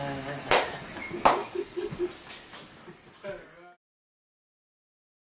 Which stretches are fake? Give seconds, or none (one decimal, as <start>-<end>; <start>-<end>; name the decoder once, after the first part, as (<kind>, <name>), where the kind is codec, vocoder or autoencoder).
1.4-1.9 (codec, DAC)